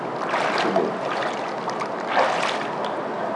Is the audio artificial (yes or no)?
no